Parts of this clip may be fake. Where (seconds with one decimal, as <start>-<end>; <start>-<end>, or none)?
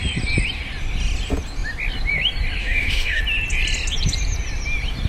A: 2.6-3.2